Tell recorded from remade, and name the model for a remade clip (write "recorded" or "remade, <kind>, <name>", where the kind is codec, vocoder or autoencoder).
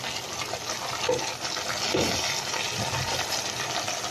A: recorded